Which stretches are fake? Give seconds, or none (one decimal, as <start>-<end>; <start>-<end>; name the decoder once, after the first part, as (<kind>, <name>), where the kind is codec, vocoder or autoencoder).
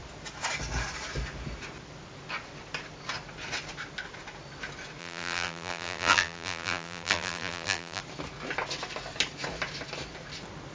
5.0-8.0 (vocoder, BigVGAN v2)